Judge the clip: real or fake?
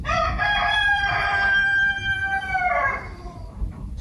fake